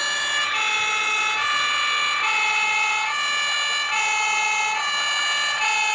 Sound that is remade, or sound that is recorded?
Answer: recorded